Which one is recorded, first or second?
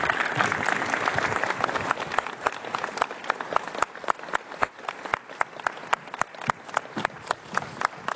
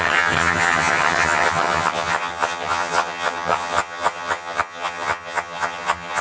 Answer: first